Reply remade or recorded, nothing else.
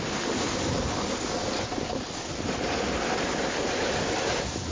recorded